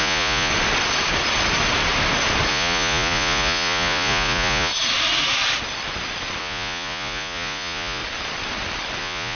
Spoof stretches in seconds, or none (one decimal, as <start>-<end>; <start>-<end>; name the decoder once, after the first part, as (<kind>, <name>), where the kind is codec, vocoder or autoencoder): 0.0-0.5 (vocoder, Vocos); 2.5-4.7; 6.4-8.0; 9.0-9.4